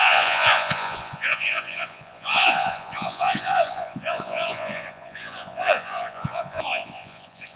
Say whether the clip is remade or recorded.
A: remade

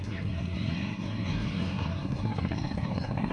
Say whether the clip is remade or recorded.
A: remade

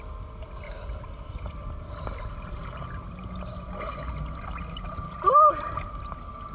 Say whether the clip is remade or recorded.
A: recorded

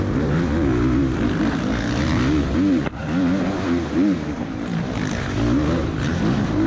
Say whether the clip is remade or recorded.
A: recorded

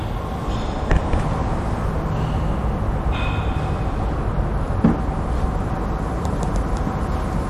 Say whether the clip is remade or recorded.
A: recorded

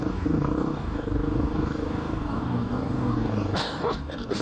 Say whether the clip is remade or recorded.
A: remade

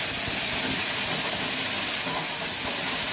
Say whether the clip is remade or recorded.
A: recorded